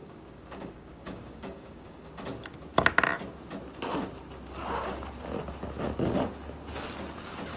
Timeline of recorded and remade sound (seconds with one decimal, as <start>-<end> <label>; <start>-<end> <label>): 0.0-2.1 remade; 2.1-7.6 recorded